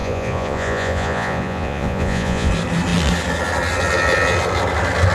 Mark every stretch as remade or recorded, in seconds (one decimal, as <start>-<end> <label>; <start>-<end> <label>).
0.0-2.5 remade; 2.5-5.1 recorded